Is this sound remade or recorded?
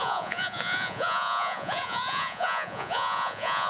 remade